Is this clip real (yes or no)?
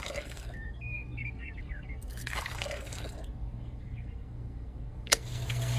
no